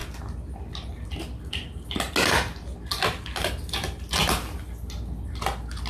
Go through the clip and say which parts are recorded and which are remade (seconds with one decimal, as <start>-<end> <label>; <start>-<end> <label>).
0.0-5.9 recorded